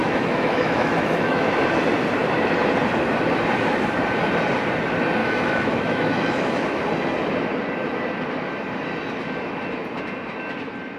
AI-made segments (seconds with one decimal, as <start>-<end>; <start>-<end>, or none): 0.0-1.6; 5.2-6.8